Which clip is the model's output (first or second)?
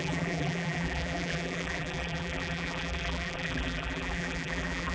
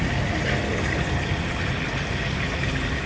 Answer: first